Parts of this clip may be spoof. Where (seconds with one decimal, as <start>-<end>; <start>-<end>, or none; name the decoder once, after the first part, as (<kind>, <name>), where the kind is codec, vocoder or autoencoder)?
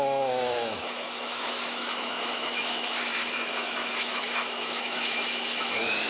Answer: 0.0-6.1 (autoencoder, DAC-VAE)